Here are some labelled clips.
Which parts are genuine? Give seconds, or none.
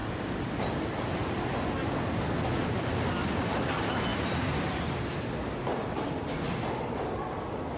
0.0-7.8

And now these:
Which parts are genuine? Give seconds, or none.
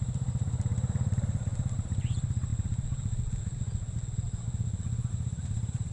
2.5-5.1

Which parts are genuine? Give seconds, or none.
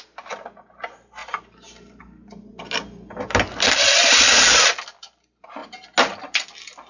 0.0-6.9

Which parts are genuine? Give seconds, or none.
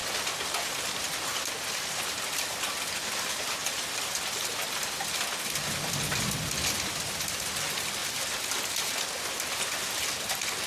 0.0-1.3; 2.4-8.0; 8.6-10.7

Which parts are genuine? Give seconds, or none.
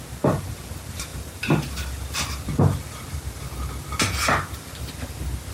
0.0-5.5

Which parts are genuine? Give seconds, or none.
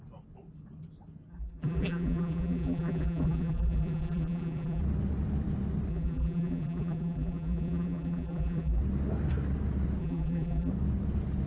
0.0-1.3; 4.8-5.9; 8.8-10.0; 10.7-11.5